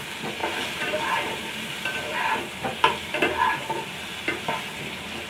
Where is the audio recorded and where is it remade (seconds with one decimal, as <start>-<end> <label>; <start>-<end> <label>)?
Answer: 0.0-0.4 recorded; 0.4-2.4 remade; 2.4-5.3 recorded